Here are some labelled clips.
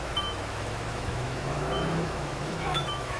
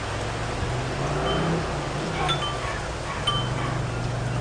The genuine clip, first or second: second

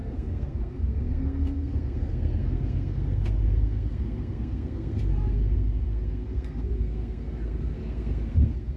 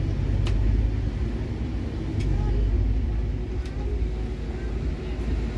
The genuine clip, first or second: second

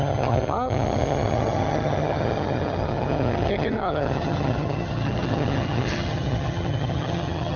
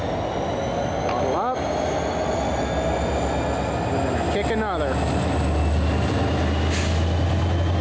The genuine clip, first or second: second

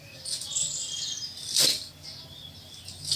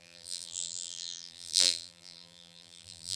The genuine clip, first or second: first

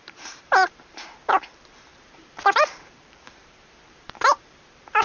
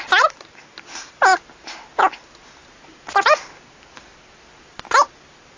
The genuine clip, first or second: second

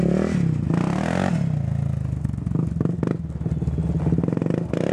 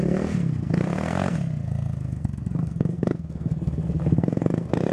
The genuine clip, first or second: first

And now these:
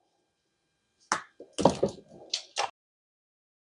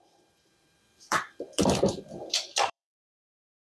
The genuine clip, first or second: first